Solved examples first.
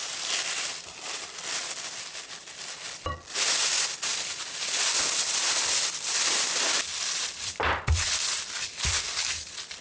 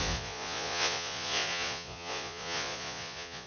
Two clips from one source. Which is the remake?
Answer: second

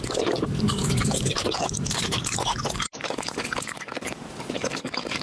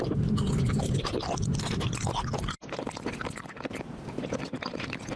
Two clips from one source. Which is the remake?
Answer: first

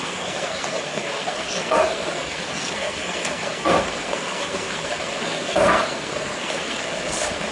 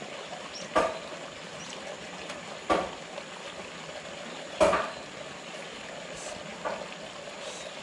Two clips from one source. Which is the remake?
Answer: first